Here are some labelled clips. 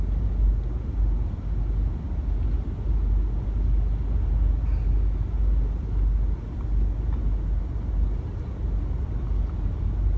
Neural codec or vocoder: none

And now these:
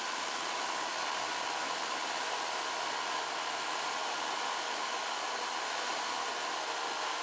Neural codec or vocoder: none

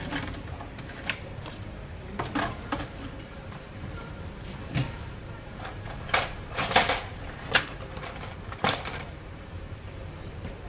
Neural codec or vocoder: vocoder, BigVGAN v2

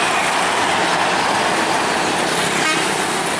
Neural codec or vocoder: none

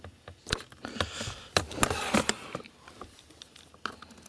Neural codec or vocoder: none